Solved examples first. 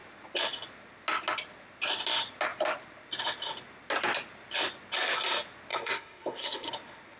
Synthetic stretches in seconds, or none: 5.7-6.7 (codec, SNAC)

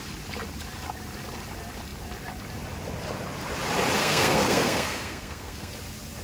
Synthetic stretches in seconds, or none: 4.0-5.7 (codec, SNAC)

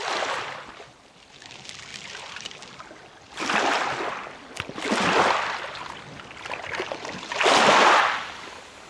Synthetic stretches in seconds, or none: none